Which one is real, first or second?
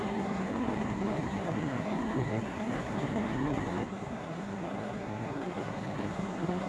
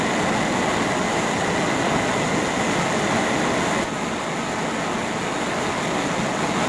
second